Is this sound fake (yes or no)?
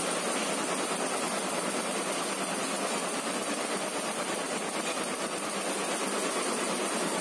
no